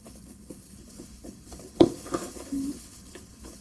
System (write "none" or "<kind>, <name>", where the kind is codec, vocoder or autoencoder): codec, HILCodec